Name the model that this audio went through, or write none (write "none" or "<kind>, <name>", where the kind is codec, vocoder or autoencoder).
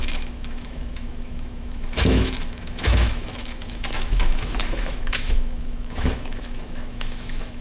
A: autoencoder, DAC-VAE